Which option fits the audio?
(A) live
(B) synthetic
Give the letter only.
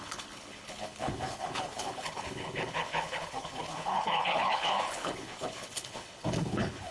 B